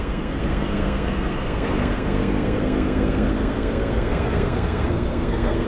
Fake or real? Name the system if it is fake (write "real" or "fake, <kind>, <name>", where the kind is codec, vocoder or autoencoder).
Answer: fake, codec, SNAC